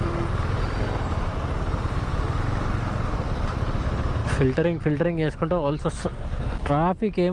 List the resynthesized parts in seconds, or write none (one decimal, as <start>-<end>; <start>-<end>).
4.2-6.7